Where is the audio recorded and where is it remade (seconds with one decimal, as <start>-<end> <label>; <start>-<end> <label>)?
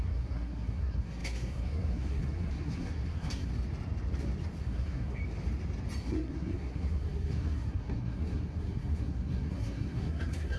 0.0-3.5 remade; 3.5-4.6 recorded; 4.6-5.2 remade; 5.2-6.0 recorded; 6.0-10.6 remade